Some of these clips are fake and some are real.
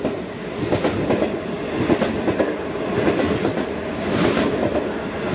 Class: real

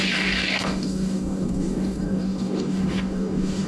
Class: fake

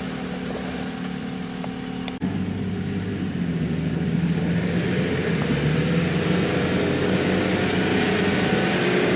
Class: real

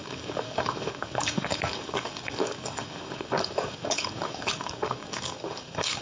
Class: fake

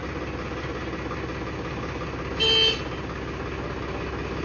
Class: real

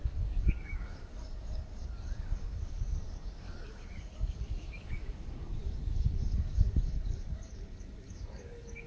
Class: fake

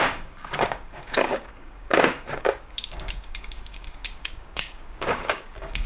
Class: fake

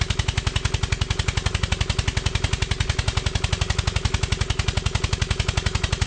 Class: real